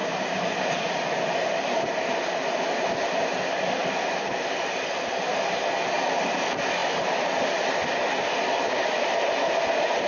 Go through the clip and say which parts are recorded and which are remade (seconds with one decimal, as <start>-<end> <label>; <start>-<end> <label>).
0.0-3.8 recorded; 3.8-4.7 remade; 4.7-10.1 recorded